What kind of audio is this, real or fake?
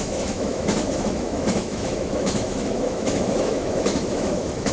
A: fake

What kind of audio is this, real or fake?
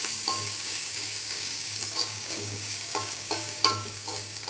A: fake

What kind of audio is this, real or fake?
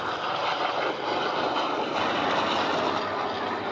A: real